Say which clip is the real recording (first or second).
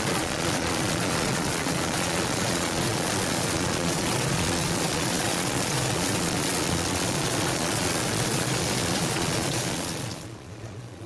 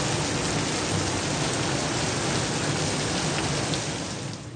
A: second